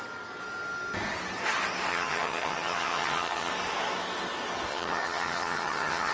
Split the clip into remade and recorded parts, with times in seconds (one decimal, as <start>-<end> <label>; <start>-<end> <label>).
0.0-1.9 recorded; 1.9-3.5 remade; 3.5-4.7 recorded; 4.7-6.1 remade